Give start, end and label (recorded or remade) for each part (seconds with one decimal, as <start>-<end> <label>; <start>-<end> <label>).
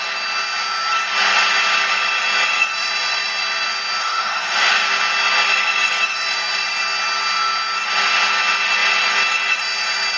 0.0-4.0 recorded; 4.0-4.7 remade; 4.7-10.2 recorded